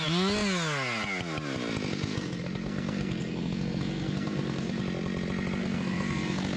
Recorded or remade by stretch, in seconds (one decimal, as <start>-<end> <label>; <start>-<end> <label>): 0.0-1.9 recorded; 1.9-4.8 remade; 4.8-5.6 recorded; 5.6-6.6 remade